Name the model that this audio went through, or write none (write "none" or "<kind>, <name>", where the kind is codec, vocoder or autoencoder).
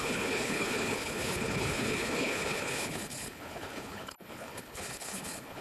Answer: codec, HILCodec